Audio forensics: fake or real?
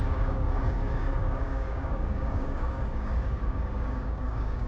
fake